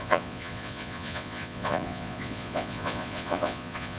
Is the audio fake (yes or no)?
yes